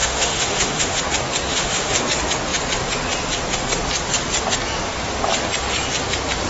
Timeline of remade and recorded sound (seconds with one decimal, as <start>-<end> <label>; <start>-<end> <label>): 0.0-1.0 remade; 1.0-1.5 recorded; 1.5-2.0 remade; 2.0-6.5 recorded